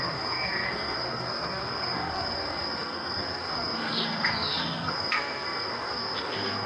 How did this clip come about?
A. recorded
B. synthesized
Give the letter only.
B